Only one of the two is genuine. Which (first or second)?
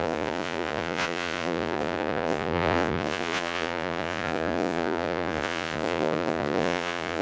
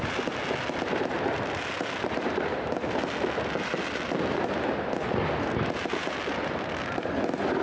second